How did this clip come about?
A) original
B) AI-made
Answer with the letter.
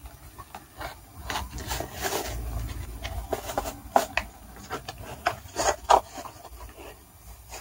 B